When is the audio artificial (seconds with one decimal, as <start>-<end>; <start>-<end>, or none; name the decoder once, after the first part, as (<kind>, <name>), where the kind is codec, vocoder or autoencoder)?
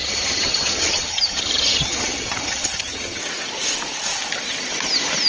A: 0.0-3.2 (vocoder, HiFi-GAN)